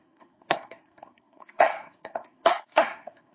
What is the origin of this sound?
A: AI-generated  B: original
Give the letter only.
A